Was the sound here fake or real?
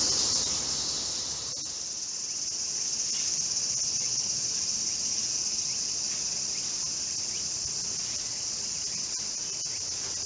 real